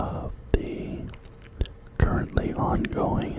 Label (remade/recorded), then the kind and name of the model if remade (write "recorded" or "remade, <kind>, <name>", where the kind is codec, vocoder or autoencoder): recorded